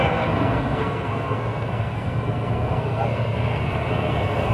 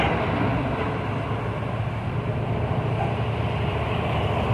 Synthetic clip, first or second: first